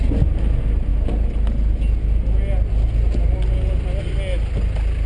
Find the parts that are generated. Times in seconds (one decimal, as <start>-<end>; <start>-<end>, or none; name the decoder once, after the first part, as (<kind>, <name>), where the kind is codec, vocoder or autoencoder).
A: none